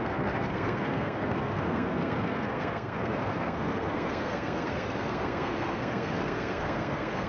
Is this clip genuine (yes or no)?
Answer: no